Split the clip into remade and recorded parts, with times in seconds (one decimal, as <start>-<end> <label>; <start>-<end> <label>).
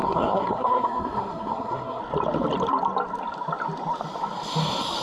0.0-2.0 remade; 2.0-5.0 recorded